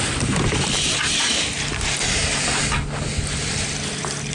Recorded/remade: recorded